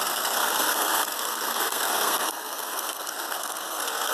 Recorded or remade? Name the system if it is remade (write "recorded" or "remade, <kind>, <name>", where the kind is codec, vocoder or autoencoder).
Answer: remade, codec, SNAC